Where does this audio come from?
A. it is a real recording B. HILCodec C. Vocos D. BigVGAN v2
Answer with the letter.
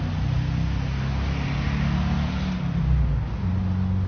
A